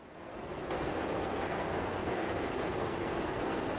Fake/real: fake